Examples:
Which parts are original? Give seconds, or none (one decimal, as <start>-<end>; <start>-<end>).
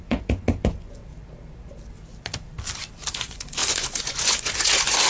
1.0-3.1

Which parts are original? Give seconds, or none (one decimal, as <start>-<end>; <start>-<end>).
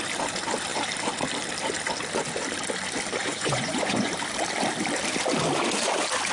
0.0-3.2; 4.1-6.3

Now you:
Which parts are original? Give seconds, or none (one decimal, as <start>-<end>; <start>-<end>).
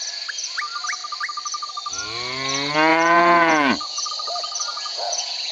0.0-2.9; 4.1-4.7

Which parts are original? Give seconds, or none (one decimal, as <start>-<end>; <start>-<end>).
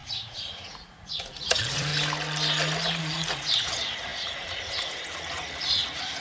1.9-3.0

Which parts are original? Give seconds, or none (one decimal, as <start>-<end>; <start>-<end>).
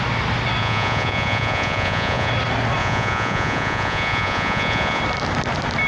0.0-0.6; 2.3-2.8; 5.0-5.9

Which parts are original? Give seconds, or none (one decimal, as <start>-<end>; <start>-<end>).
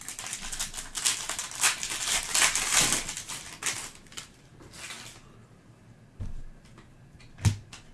0.0-7.9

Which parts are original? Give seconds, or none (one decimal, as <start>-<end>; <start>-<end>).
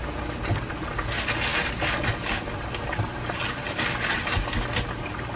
0.0-5.4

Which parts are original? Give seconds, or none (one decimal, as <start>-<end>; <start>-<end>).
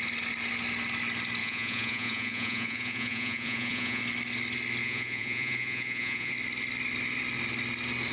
0.0-1.4; 4.0-4.8; 6.3-8.1